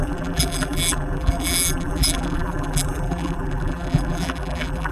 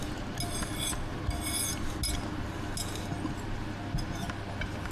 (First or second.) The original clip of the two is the second